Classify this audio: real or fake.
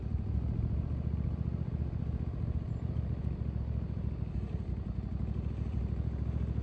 real